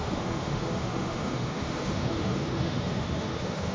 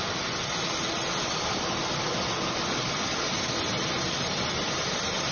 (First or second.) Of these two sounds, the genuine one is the second